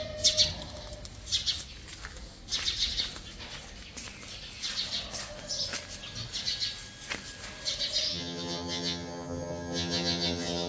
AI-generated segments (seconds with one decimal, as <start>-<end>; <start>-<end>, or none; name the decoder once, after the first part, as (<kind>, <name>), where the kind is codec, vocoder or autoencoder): 8.1-10.7 (vocoder, HiFi-GAN)